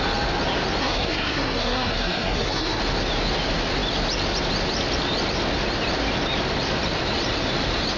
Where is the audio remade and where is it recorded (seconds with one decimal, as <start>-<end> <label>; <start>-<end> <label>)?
0.0-0.8 recorded; 0.8-2.8 remade; 2.8-8.0 recorded